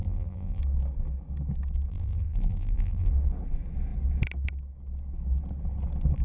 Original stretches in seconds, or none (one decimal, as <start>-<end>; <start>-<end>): 0.6-1.9; 3.1-6.2